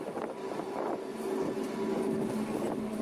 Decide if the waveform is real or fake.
real